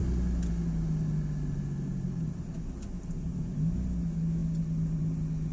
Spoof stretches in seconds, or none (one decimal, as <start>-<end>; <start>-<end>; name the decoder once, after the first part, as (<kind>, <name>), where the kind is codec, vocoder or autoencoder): none